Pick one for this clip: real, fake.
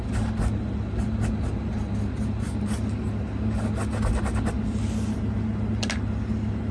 real